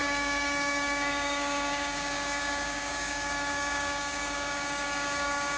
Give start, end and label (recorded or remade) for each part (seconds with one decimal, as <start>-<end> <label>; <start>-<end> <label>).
0.0-5.6 remade